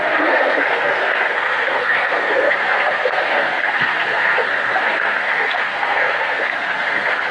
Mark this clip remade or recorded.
remade